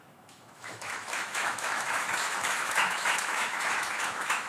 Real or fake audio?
fake